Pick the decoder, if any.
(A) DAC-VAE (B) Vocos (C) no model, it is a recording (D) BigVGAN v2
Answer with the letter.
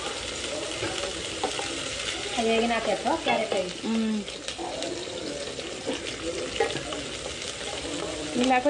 C